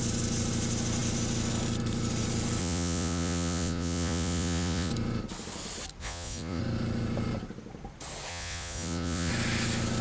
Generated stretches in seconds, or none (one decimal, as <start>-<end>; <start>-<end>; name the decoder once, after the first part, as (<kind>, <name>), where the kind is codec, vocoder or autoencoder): 2.6-4.9 (vocoder, Vocos); 6.0-6.6; 8.3-9.3